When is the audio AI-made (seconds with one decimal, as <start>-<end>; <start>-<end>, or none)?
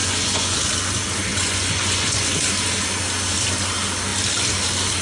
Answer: 0.0-0.6; 1.3-2.3